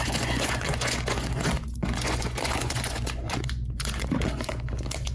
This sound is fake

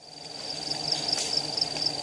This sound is real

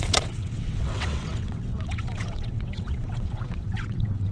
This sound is fake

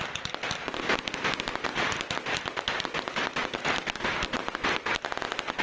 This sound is real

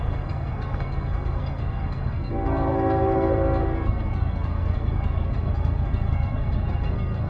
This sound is fake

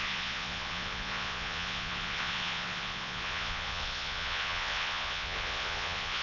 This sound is fake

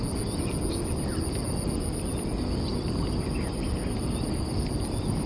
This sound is real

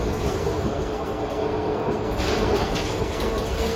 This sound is fake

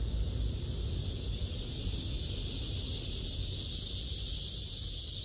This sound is real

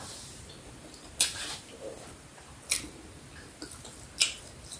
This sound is real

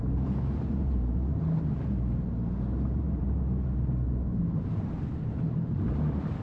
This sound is fake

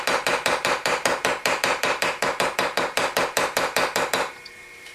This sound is fake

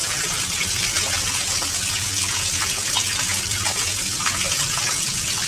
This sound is real